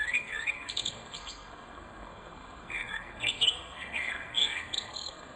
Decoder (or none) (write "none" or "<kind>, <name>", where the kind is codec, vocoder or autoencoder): codec, SNAC